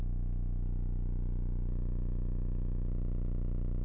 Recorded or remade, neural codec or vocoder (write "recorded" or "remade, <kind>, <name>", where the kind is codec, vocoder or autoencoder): recorded